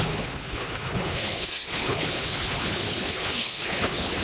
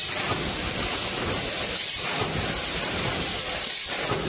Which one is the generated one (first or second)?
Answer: first